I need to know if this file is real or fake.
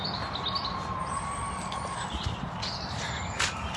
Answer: real